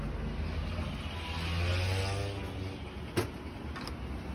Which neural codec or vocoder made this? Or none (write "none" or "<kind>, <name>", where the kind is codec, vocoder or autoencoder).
none